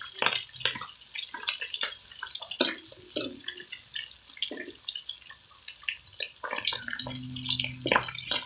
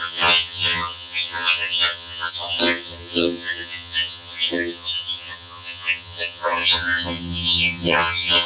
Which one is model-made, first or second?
second